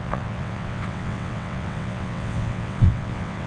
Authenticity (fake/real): fake